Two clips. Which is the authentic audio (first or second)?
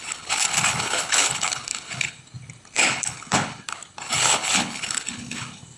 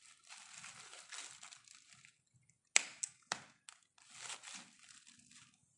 second